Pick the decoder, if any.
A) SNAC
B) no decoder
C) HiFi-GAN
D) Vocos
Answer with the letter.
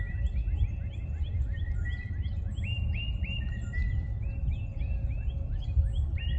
B